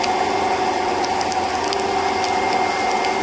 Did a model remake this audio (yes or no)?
no